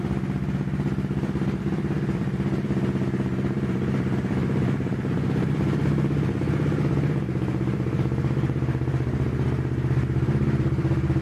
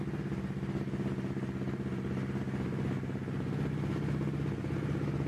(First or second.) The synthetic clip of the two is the first